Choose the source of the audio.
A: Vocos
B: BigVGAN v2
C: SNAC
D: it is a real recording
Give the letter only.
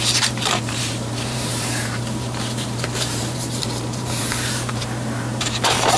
B